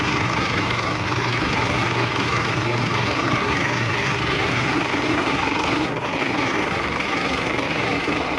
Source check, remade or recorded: remade